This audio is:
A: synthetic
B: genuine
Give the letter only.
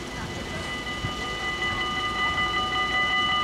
B